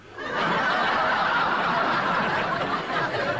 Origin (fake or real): real